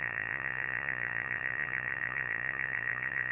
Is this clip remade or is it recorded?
remade